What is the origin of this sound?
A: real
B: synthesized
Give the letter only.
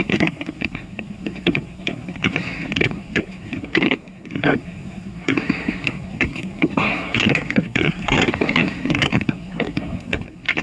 B